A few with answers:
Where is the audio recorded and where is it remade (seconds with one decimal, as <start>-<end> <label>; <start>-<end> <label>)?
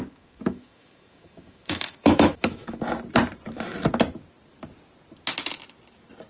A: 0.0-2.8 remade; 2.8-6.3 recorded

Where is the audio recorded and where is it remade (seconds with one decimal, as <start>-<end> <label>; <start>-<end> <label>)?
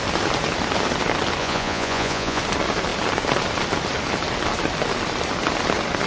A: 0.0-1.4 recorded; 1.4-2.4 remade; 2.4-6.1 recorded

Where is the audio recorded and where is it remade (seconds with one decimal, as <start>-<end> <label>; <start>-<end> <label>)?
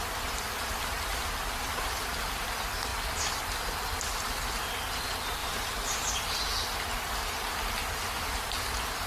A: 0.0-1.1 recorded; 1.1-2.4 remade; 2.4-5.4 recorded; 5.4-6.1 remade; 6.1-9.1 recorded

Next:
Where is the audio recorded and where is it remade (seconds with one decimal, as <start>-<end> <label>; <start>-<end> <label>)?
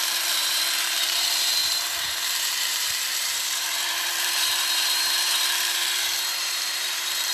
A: 0.0-7.3 remade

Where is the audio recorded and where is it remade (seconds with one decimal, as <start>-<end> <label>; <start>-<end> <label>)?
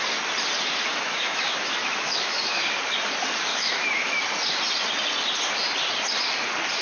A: 0.0-0.9 recorded; 0.9-2.6 remade; 2.6-3.5 recorded; 3.5-4.2 remade; 4.2-6.8 recorded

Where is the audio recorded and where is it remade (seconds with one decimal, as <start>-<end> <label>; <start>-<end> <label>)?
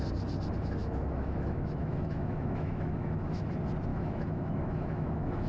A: 0.0-0.8 recorded; 0.8-3.5 remade; 3.5-3.9 recorded; 3.9-5.5 remade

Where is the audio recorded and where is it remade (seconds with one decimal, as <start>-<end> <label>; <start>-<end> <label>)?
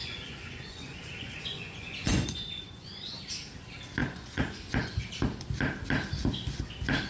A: 0.0-3.2 remade; 3.2-4.0 recorded; 4.0-5.0 remade; 5.0-7.1 recorded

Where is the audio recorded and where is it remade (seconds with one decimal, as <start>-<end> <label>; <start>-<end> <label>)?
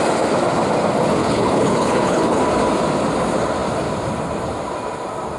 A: 0.0-1.2 recorded; 1.2-2.4 remade; 2.4-5.4 recorded